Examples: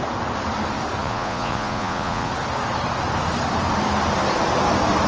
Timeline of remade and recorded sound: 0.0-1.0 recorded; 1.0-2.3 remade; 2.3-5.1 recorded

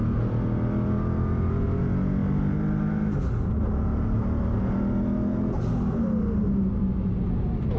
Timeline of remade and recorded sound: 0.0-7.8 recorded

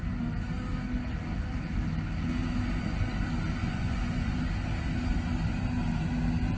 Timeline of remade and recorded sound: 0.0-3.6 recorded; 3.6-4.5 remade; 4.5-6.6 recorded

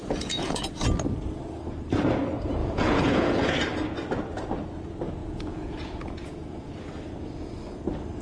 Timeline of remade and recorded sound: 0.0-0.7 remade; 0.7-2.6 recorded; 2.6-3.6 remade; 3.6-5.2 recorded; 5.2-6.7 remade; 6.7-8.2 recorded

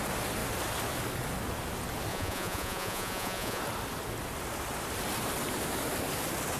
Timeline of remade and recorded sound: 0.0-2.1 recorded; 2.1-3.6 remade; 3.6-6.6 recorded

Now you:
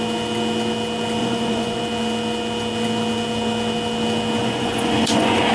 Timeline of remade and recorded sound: 0.0-1.2 recorded; 1.2-1.8 remade; 1.8-4.4 recorded; 4.4-5.5 remade

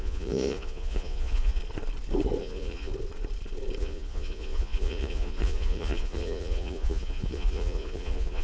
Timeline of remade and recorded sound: 0.0-1.6 remade; 1.6-2.4 recorded; 2.4-2.9 remade; 2.9-3.8 recorded; 3.8-8.4 remade